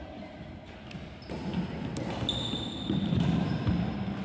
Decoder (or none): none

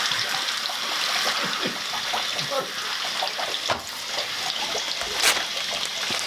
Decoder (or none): none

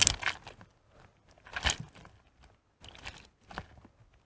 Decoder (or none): none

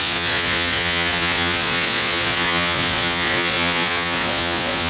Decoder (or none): vocoder, Vocos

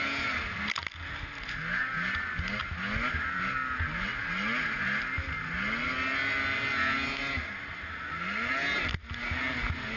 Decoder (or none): none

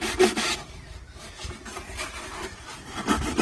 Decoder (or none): vocoder, BigVGAN v2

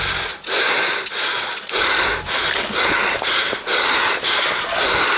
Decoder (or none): none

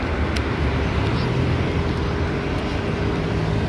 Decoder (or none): none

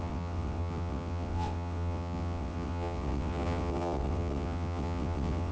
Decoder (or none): vocoder, WaveNeXt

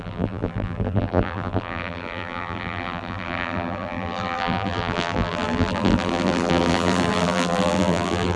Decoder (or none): vocoder, BigVGAN v2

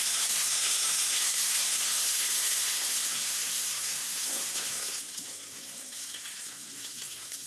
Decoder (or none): codec, SNAC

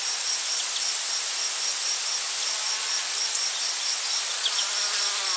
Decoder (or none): none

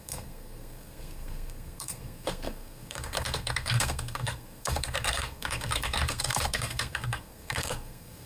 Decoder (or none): codec, SNAC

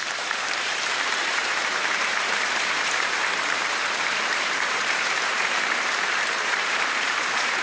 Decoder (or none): vocoder, BigVGAN v2